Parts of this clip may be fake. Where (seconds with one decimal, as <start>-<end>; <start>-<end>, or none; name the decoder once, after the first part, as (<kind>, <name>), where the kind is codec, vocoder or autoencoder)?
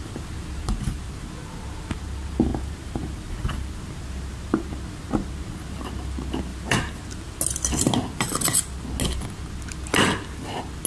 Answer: 2.5-3.3 (vocoder, BigVGAN v2); 6.5-7.0